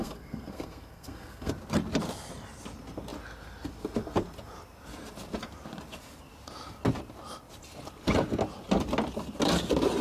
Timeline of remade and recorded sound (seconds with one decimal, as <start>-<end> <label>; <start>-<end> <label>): 0.0-1.5 remade; 1.5-10.0 recorded